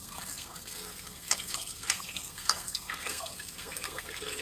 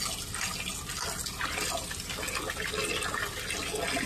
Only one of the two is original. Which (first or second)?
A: second